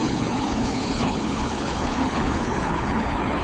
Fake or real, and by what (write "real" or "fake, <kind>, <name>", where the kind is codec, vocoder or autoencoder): fake, codec, HILCodec